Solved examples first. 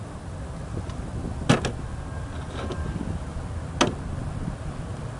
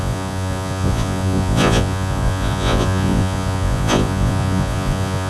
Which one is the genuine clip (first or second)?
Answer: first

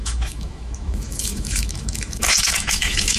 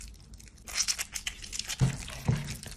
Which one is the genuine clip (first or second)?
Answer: second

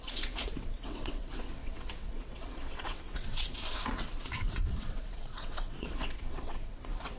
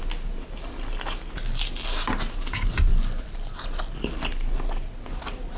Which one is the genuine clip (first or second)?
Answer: second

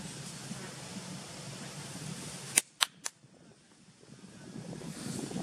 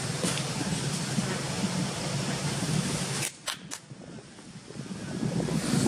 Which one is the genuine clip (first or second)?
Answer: second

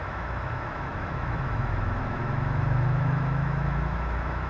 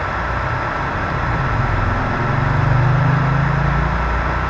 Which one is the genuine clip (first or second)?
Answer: second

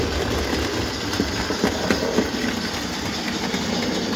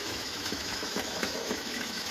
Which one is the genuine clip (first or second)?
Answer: first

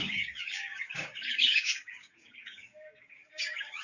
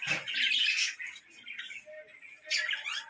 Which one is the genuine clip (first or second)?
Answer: second